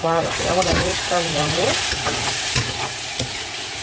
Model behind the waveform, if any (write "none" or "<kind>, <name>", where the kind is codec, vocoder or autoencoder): vocoder, Vocos